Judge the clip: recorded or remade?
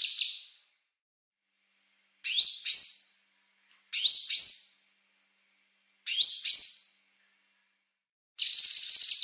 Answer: recorded